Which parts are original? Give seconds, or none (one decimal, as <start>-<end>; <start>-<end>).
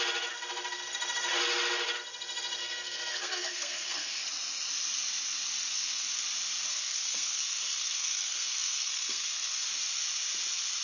0.0-2.6; 4.2-5.7; 6.2-6.7; 9.7-10.8